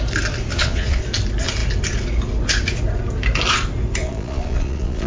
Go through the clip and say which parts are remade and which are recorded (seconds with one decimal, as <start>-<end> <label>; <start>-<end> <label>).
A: 0.0-0.5 recorded; 0.5-1.0 remade; 1.0-4.0 recorded; 4.0-5.1 remade